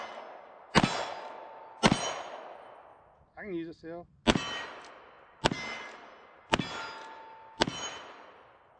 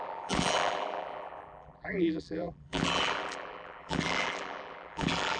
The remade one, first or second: second